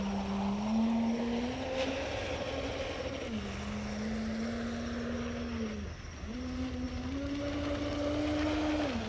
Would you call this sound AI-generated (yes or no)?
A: no